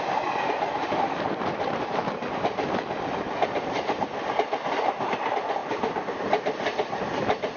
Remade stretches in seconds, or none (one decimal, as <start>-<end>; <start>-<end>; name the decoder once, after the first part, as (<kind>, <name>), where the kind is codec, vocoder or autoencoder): 0.8-4.0 (vocoder, BigVGAN v2); 5.6-6.2